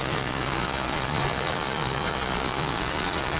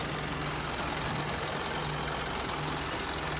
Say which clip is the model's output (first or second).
first